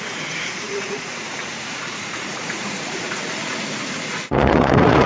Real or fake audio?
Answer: fake